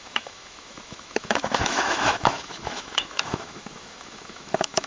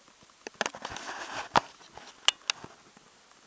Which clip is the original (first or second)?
second